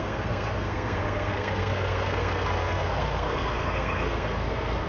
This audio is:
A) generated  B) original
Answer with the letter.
A